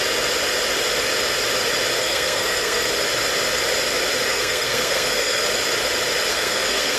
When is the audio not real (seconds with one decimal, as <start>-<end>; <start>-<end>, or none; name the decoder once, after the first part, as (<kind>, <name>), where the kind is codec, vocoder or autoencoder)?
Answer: 2.0-2.9 (codec, SNAC); 4.3-5.4; 6.3-7.0